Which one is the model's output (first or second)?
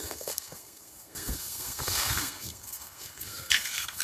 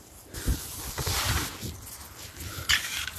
first